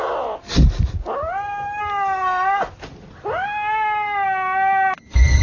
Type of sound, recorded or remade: recorded